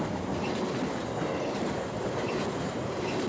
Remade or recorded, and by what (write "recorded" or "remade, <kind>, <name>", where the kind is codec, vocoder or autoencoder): recorded